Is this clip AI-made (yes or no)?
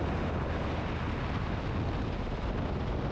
no